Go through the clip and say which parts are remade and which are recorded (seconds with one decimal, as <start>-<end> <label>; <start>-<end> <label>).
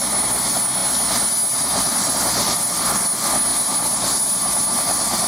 0.0-5.3 recorded